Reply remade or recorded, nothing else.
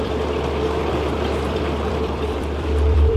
remade